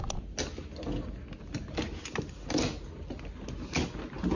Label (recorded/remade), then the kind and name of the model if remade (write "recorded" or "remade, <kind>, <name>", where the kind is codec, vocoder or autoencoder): recorded